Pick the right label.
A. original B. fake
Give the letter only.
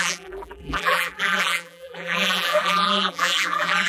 B